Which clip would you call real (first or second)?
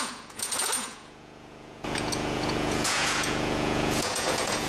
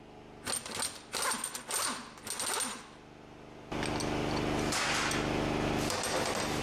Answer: second